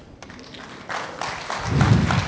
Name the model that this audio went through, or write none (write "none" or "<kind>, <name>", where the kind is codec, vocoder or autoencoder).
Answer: none